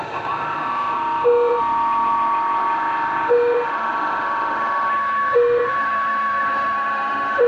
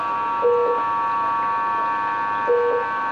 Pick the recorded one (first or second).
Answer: second